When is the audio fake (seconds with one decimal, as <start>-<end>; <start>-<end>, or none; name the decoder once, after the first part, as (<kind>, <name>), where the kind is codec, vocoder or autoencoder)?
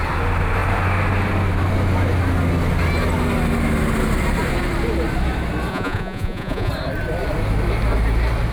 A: 5.7-6.7 (vocoder, Vocos)